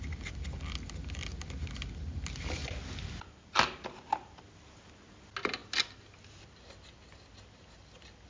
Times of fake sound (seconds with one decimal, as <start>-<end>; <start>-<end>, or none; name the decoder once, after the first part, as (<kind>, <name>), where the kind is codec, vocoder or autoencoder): none